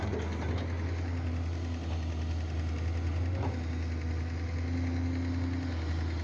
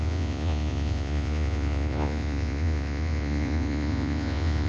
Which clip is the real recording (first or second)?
first